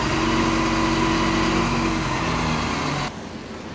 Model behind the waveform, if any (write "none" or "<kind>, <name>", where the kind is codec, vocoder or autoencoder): none